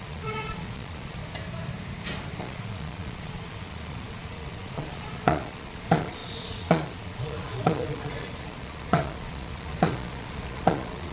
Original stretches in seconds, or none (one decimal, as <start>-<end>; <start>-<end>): 1.2-2.4